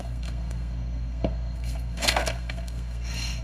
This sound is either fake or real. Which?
fake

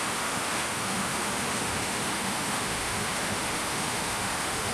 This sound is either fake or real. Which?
fake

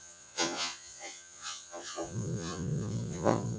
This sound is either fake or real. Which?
fake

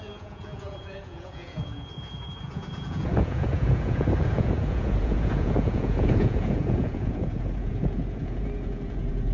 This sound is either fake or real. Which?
fake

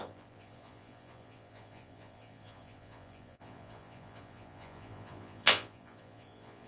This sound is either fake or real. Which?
fake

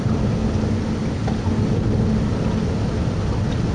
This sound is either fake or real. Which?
real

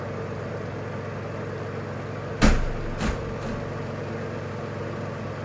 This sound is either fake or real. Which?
real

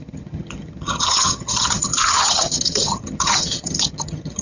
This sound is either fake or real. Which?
fake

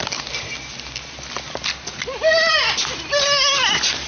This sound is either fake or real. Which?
real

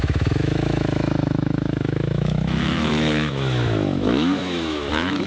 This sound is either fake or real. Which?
fake